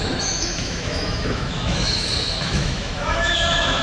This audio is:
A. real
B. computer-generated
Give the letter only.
B